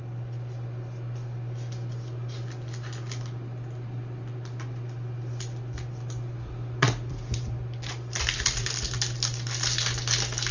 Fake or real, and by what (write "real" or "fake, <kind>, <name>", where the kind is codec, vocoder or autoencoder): real